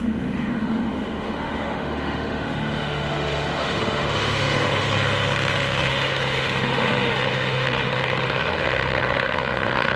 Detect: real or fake fake